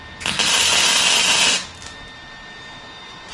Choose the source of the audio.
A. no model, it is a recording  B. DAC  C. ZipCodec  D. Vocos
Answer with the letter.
A